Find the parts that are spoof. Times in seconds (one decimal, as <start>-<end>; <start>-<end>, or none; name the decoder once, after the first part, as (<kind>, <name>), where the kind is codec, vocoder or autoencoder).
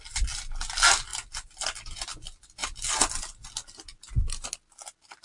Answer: none